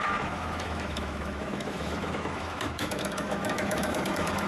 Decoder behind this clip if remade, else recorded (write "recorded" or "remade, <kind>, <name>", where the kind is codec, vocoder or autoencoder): remade, autoencoder, DAC-VAE